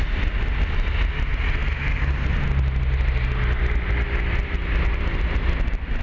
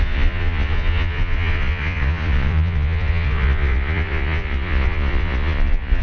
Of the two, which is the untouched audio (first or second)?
first